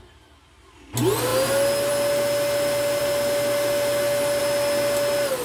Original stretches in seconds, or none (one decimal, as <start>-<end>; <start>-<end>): 0.0-5.4